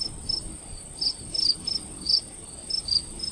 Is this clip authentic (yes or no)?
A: yes